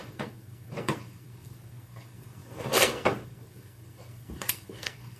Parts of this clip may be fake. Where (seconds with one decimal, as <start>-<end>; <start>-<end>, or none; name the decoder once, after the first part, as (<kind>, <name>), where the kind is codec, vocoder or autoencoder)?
0.0-5.2 (codec, SNAC)